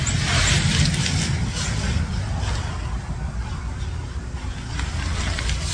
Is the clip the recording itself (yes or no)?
yes